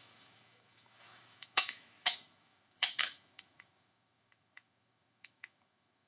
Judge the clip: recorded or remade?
remade